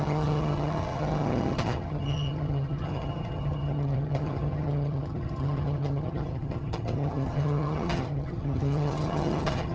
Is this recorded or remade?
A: remade